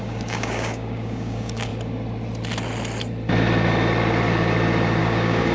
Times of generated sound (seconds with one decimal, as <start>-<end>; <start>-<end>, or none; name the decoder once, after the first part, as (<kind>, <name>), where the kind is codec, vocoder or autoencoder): 0.0-1.7 (codec, DAC); 5.0-5.5